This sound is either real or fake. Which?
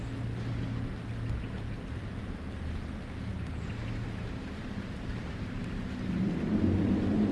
real